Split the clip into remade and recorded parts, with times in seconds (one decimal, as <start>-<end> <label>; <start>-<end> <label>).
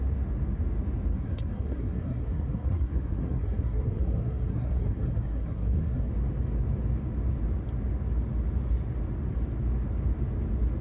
0.0-1.1 recorded; 1.1-6.1 remade; 6.1-10.8 recorded